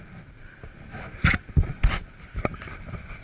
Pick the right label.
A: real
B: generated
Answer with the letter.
A